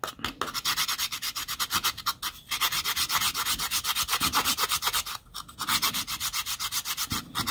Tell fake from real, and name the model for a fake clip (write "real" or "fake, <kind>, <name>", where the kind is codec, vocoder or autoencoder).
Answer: real